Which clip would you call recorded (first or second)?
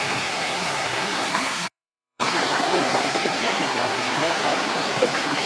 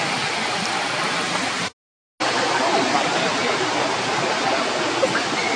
second